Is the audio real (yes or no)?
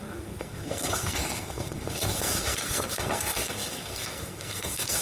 no